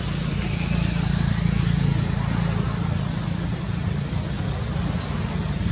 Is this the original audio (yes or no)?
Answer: yes